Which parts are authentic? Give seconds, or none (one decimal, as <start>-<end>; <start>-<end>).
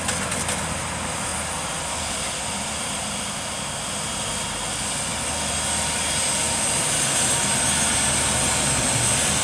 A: 0.0-9.4